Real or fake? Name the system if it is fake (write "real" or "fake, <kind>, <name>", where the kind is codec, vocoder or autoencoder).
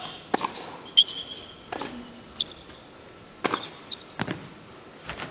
real